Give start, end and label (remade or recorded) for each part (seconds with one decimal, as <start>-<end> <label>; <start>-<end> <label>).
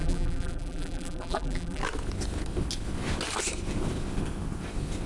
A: 0.0-1.8 remade; 1.8-5.1 recorded